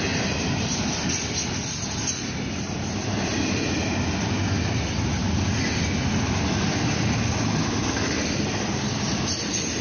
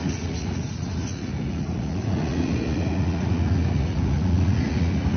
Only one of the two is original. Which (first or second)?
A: first